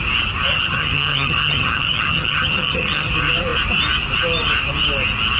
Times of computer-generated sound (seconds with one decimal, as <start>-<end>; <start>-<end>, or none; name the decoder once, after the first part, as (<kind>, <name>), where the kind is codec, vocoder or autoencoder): 0.5-3.1 (vocoder, HiFi-GAN)